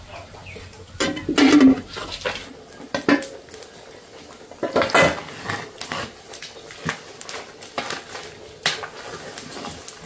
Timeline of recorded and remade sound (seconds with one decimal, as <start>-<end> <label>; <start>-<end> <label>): 0.0-10.1 recorded